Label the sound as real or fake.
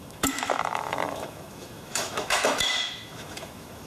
fake